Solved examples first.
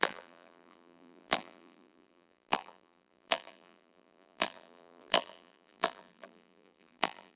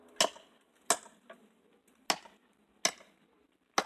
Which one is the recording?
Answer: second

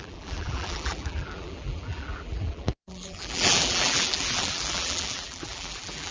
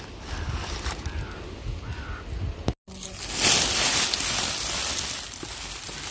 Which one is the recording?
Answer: second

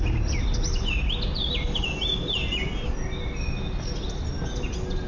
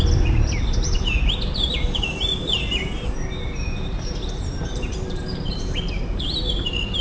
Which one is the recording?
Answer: first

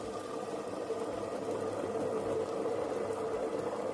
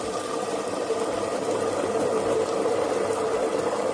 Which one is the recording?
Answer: first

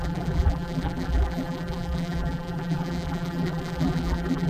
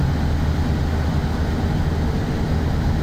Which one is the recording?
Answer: second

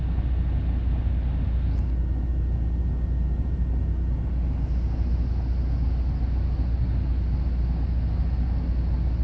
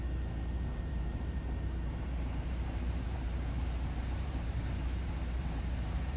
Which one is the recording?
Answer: first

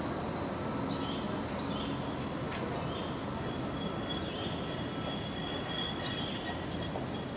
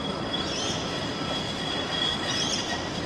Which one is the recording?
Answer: first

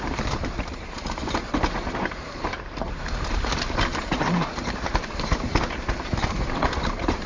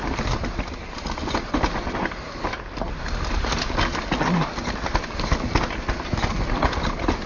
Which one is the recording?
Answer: second